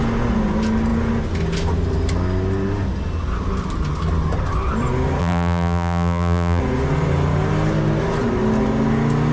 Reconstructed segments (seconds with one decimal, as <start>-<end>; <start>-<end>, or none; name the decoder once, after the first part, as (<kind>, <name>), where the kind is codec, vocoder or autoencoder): 5.2-6.6 (vocoder, BigVGAN v2)